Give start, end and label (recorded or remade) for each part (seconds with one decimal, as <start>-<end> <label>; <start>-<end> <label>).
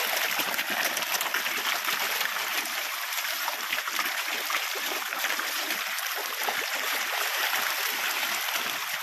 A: 0.0-2.5 recorded; 2.5-7.4 remade; 7.4-9.0 recorded